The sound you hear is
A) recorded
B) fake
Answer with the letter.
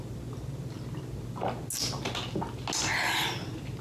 A